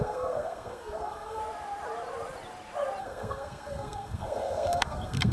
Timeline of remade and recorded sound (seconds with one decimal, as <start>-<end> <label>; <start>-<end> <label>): 0.0-1.4 remade; 1.4-3.0 recorded; 3.0-5.3 remade